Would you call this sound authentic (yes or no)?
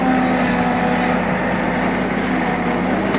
yes